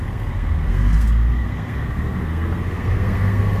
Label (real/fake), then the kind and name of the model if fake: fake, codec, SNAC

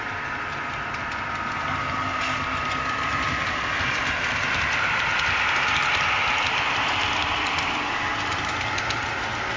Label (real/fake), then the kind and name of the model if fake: real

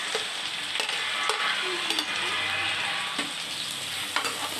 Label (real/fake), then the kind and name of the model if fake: real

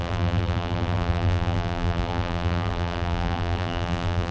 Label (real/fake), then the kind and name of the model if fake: fake, vocoder, BigVGAN v2